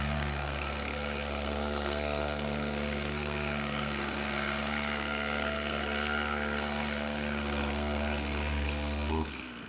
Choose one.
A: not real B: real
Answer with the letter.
A